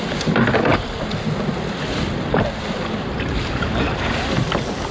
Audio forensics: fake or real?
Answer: real